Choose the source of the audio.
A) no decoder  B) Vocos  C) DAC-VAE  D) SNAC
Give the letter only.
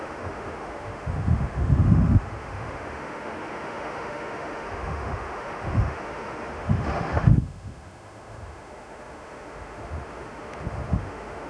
C